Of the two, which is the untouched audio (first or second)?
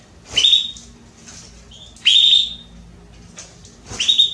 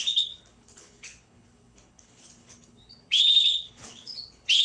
first